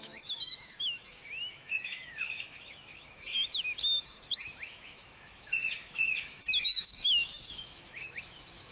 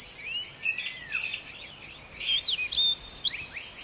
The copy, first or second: first